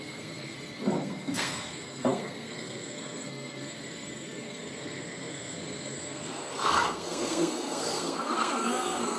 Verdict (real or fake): fake